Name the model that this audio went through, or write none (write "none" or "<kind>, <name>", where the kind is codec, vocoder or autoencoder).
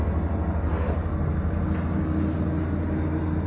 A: none